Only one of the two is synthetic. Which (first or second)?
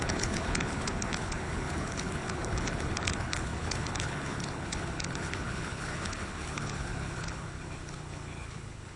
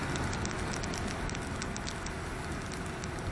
first